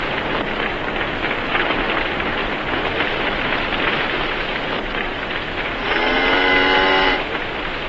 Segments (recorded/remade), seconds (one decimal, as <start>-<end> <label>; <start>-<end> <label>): 0.0-0.5 remade; 0.5-1.5 recorded; 1.5-7.9 remade